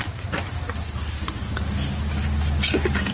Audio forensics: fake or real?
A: fake